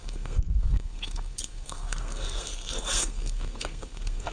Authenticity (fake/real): fake